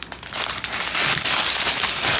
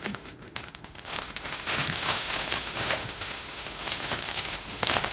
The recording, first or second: first